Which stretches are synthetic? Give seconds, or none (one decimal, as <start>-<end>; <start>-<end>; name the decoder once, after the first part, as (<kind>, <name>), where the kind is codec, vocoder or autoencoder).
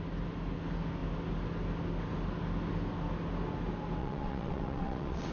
4.0-5.3 (vocoder, WaveNeXt)